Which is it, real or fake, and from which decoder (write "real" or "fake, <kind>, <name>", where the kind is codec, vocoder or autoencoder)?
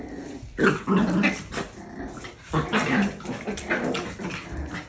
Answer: real